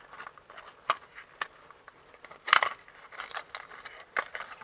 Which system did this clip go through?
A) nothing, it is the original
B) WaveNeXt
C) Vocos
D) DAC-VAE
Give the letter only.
A